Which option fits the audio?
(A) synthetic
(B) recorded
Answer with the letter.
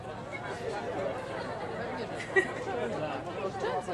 B